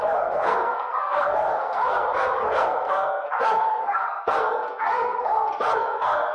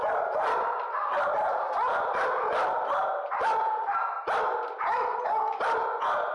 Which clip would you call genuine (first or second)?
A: second